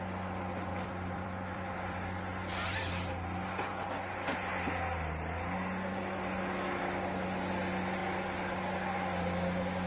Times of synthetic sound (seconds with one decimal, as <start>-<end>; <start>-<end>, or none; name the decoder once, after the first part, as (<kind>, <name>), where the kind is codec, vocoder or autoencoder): 0.7-3.1 (vocoder, BigVGAN v2)